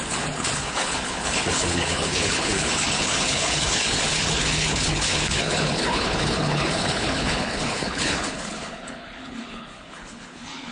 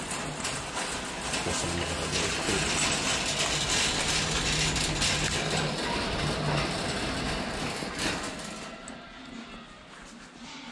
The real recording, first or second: second